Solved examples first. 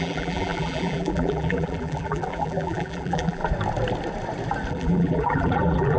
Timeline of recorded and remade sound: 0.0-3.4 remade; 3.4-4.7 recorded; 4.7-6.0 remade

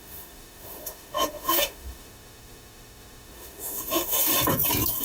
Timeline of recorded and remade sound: 0.0-4.3 remade; 4.3-5.0 recorded

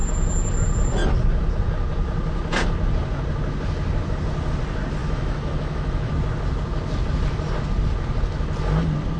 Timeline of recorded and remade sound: 0.0-5.0 recorded; 5.0-6.1 remade; 6.1-9.2 recorded

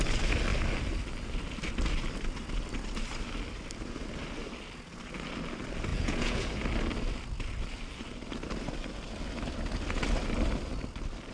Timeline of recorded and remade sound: 0.0-5.9 recorded; 5.9-6.5 remade; 6.5-11.3 recorded

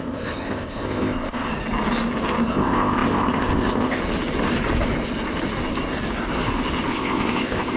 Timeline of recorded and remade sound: 0.0-1.5 remade; 1.5-2.5 recorded; 2.5-4.0 remade; 4.0-6.9 recorded; 6.9-7.8 remade